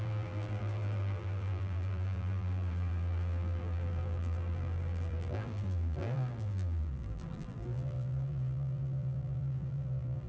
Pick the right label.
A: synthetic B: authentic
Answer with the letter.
A